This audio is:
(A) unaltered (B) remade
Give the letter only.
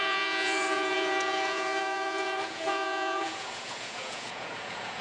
B